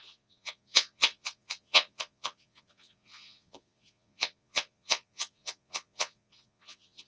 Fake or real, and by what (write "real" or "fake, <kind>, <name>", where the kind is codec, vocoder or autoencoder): fake, vocoder, Vocos